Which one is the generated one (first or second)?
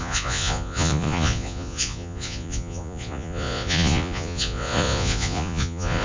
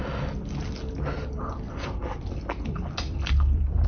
first